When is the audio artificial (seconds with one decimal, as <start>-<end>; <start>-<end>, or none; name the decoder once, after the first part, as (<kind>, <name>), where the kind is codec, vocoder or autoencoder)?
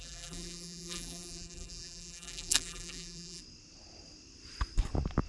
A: 0.0-3.4 (vocoder, BigVGAN v2)